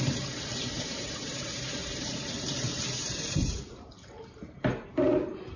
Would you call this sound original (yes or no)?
no